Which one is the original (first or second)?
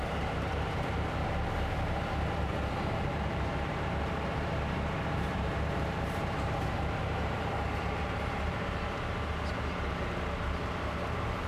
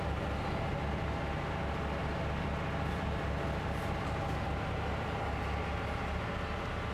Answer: second